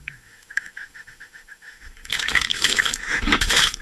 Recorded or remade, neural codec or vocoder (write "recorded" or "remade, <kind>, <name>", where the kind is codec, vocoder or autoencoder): remade, autoencoder, DAC-VAE